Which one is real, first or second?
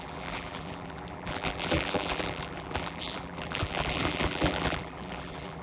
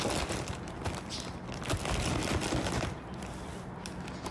second